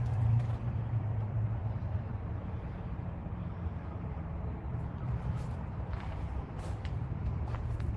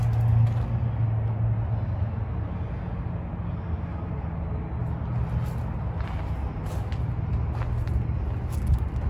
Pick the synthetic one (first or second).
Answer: first